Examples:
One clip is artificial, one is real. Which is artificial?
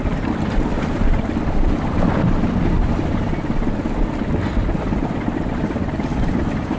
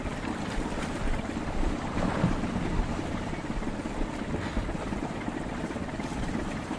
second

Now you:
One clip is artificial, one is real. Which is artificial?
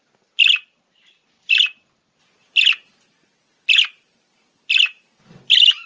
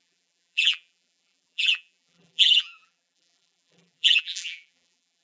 second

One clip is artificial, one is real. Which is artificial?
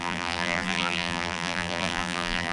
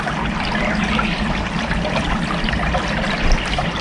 first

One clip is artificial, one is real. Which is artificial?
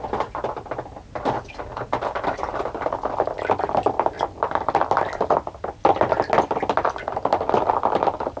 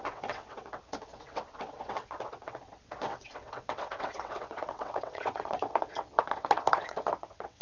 second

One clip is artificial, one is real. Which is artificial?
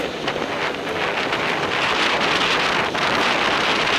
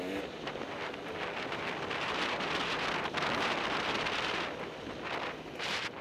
second